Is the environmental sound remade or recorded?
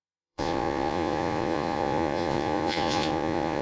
remade